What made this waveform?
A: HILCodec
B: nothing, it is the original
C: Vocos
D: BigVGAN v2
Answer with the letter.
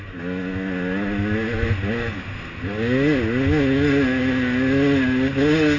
B